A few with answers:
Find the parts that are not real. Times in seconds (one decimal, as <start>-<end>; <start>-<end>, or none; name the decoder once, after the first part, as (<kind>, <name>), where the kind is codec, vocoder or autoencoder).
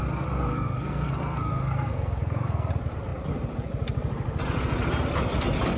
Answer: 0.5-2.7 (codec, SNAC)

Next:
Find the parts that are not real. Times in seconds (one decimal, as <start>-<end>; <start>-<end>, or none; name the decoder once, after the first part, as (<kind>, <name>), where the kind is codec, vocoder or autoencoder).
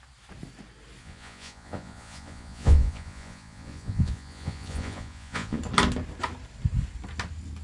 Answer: 1.0-5.6 (vocoder, Vocos)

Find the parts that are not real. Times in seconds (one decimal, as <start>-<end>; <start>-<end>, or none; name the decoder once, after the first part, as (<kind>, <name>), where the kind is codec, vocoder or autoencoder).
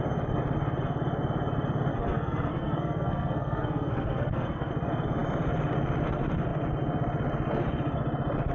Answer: 1.9-4.7 (codec, SNAC)